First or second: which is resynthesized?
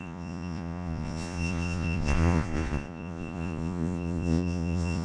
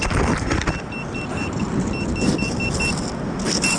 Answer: first